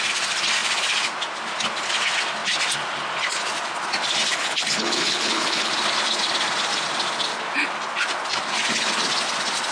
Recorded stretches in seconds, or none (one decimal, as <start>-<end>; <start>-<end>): 0.0-4.3; 5.7-9.7

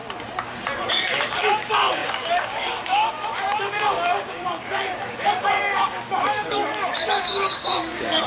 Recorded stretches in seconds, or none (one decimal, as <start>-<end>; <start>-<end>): 0.0-0.9

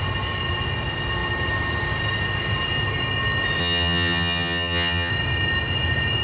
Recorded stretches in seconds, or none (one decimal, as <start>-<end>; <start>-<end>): 0.0-3.6; 5.1-6.2

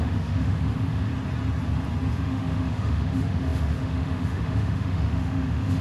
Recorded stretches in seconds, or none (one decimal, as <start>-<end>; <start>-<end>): 1.1-2.1

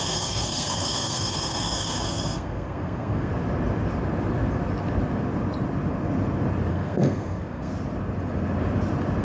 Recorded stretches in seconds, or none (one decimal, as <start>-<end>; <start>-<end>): 3.3-6.7; 7.7-9.2